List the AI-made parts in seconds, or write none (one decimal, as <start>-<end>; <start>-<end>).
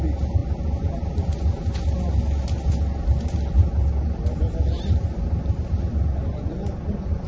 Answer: none